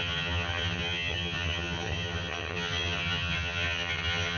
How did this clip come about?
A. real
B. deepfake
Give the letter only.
B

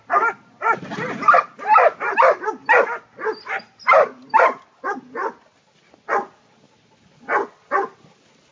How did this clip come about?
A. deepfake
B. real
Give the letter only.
B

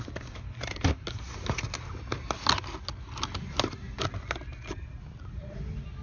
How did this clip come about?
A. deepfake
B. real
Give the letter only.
B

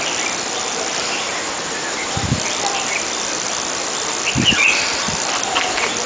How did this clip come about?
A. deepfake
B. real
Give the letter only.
B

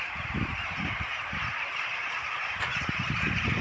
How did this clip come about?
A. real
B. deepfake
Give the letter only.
B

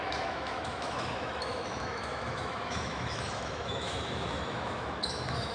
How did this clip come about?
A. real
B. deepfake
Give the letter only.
B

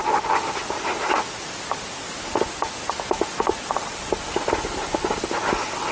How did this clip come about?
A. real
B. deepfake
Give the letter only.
A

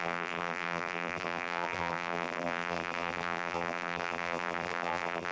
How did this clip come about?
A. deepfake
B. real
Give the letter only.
A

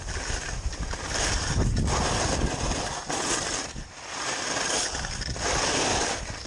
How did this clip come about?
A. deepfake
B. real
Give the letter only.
B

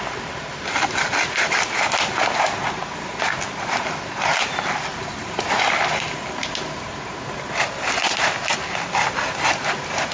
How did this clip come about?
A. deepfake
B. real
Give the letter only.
B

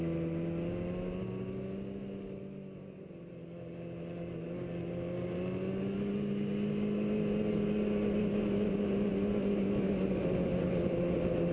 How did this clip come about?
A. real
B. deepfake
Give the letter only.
A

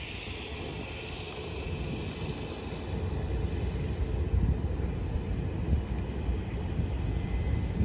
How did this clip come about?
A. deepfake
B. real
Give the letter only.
B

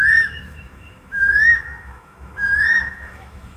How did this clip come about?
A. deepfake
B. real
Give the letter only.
A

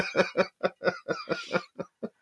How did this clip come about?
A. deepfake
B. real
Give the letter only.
B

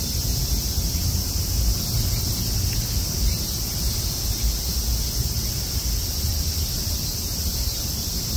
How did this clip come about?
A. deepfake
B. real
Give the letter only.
B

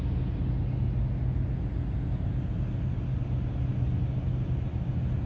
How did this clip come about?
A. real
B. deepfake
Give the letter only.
A